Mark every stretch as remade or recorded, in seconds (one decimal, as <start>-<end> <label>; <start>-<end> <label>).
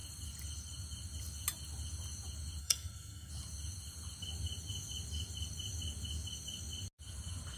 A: 0.0-2.6 recorded; 2.6-3.3 remade; 3.3-7.6 recorded